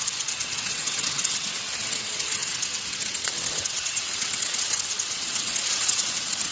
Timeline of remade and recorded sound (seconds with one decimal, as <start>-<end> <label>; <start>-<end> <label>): 0.0-6.5 remade